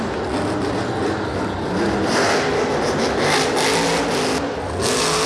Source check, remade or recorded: recorded